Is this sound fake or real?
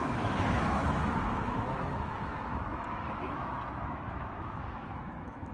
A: fake